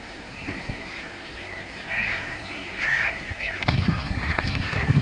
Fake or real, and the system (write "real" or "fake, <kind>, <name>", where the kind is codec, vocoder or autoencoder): fake, codec, SNAC